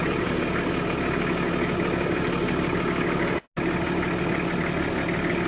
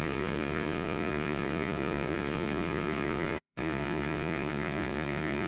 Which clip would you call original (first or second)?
first